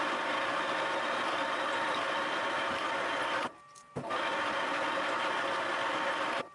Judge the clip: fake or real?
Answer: real